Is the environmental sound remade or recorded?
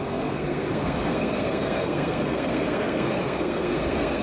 remade